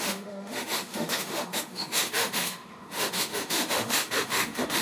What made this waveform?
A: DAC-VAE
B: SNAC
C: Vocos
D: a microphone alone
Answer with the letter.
A